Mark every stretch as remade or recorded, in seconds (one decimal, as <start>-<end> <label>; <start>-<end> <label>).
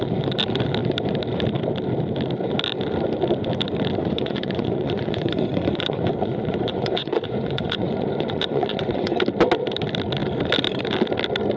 0.0-4.0 recorded; 4.0-9.2 remade; 9.2-11.6 recorded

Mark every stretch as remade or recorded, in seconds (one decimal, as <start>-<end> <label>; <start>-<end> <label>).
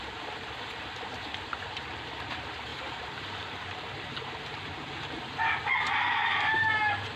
0.0-2.7 recorded; 2.7-4.9 remade; 4.9-7.2 recorded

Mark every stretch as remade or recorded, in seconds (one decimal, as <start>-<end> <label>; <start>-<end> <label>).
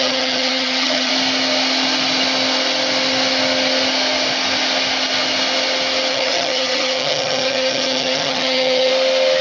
0.0-1.1 remade; 1.1-6.1 recorded; 6.1-8.9 remade; 8.9-9.4 recorded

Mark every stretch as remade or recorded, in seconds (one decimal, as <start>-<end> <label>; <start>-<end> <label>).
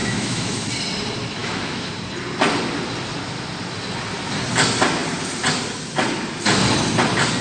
0.0-0.7 remade; 0.7-1.4 recorded; 1.4-1.9 remade; 1.9-7.4 recorded